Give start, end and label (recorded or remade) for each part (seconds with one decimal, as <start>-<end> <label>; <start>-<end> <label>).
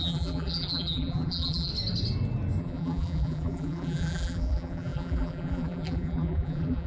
0.0-1.7 remade; 1.7-2.6 recorded; 2.6-6.9 remade